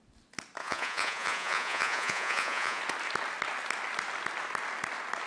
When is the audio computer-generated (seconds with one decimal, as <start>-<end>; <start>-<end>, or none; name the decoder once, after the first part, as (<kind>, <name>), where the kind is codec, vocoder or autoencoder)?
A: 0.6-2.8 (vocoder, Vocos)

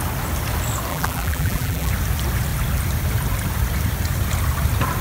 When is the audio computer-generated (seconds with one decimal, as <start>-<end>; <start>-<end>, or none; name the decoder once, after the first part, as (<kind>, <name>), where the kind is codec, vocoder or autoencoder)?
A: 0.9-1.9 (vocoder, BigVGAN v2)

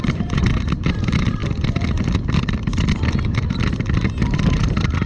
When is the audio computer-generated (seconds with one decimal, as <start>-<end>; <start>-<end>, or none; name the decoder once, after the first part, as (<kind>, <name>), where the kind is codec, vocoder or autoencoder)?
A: 0.0-1.4 (vocoder, BigVGAN v2); 4.0-4.6

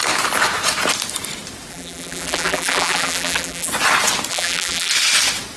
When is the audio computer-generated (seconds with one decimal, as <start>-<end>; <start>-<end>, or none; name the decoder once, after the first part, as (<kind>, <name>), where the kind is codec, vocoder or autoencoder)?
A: 1.7-3.7 (vocoder, BigVGAN v2); 4.3-4.9

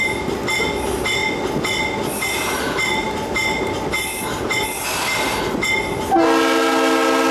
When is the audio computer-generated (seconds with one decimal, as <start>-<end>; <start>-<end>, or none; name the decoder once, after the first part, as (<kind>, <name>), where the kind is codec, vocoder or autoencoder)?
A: none

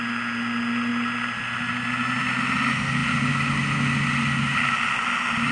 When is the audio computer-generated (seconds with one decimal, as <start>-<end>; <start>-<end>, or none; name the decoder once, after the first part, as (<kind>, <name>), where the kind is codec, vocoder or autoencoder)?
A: none

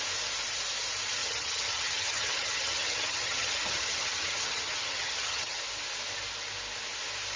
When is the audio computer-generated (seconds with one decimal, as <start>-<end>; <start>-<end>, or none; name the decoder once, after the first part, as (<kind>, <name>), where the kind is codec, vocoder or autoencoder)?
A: 1.2-5.6 (vocoder, HiFi-GAN)